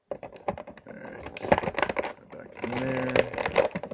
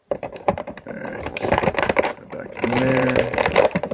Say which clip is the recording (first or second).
first